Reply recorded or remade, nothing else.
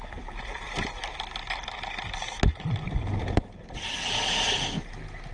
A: recorded